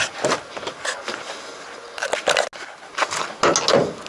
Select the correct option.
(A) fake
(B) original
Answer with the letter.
B